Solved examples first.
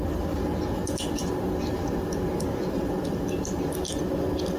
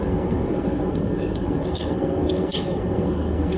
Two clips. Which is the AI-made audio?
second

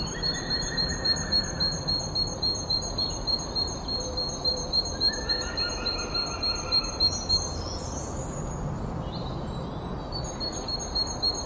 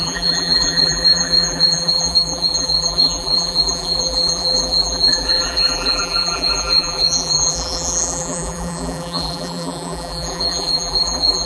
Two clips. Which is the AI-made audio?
second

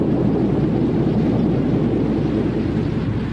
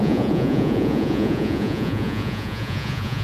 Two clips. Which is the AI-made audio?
second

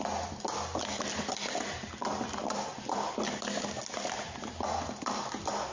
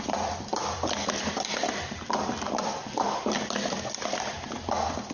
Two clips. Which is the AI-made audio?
second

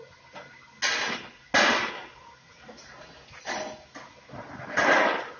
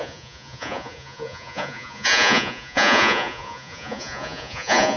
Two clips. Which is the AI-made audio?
second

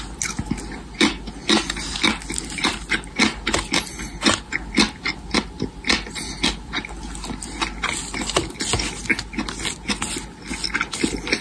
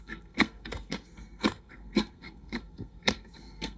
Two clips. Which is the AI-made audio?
second